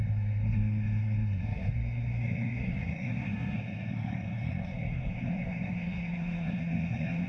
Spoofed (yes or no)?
yes